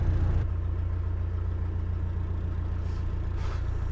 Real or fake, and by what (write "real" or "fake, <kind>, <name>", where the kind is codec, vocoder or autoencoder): real